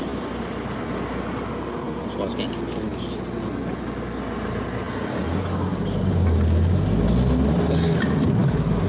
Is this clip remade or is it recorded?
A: recorded